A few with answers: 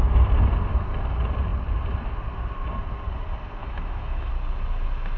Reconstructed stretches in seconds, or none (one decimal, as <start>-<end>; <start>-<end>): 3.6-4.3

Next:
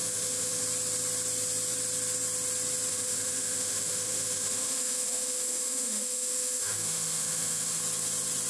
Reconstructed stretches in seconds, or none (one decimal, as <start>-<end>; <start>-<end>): 0.0-0.6; 2.9-7.8

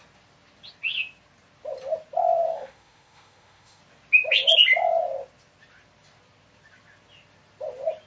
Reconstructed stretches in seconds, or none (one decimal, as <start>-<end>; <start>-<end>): 2.5-3.8

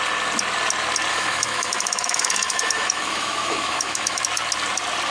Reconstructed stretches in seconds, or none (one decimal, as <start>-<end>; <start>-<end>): 1.1-4.2

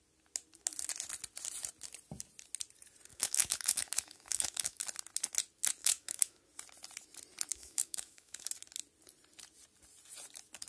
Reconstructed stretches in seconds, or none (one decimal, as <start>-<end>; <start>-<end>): 3.1-4.8; 5.8-6.4; 7.5-8.5